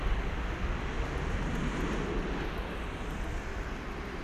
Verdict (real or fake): real